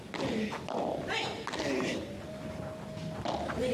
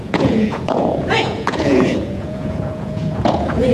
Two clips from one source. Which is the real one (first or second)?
first